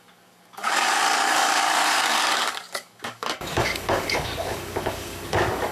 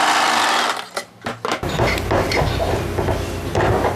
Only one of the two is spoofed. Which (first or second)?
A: first